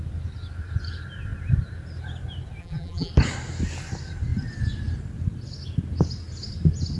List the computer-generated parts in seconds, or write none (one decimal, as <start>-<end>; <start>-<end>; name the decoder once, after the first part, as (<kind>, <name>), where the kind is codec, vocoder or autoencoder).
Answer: 2.6-3.1 (vocoder, BigVGAN v2)